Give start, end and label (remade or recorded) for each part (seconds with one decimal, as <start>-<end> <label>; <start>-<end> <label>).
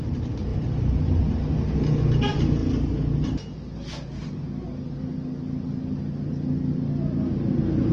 0.0-7.9 recorded